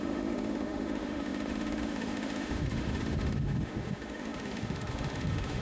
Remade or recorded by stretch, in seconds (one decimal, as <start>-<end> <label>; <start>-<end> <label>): 0.0-5.6 remade